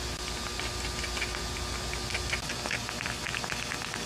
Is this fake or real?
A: real